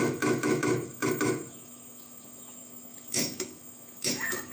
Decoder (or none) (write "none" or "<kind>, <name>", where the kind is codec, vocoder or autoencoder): autoencoder, DAC-VAE